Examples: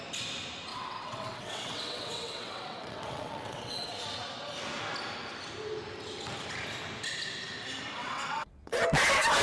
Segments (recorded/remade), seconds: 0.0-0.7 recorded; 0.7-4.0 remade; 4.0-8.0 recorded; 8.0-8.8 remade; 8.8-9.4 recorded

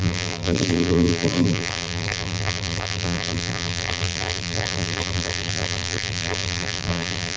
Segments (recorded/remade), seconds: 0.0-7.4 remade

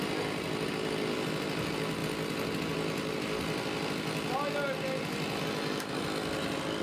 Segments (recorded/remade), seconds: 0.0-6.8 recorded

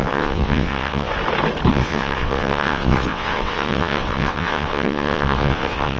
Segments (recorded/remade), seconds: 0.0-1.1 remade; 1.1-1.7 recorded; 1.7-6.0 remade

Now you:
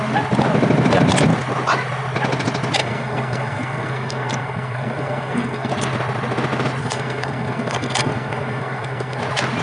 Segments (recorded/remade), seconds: 0.0-2.8 recorded; 2.8-5.7 remade; 5.7-6.8 recorded; 6.8-9.2 remade; 9.2-9.6 recorded